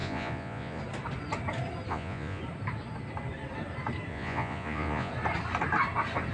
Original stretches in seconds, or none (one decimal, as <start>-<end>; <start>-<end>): 0.8-1.9; 2.4-4.1; 5.1-6.3